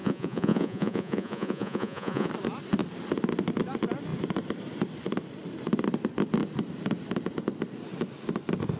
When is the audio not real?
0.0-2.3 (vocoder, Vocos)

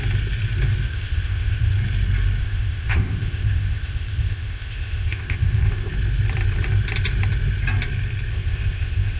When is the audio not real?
0.9-1.7 (codec, ZipCodec); 2.4-5.9; 8.3-9.2

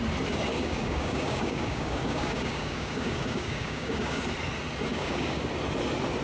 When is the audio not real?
0.5-4.2 (codec, DAC); 4.9-5.4

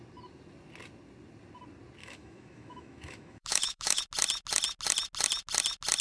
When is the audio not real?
2.0-4.0 (autoencoder, DAC-VAE)

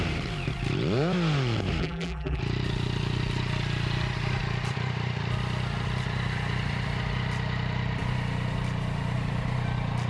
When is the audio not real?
1.8-2.4 (vocoder, BigVGAN v2)

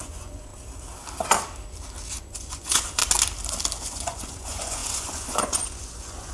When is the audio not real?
0.0-0.5 (vocoder, Vocos); 2.2-3.0; 3.8-6.3